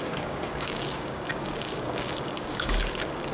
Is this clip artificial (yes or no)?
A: yes